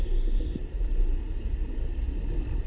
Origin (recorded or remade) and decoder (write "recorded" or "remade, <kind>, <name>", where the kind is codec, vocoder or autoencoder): recorded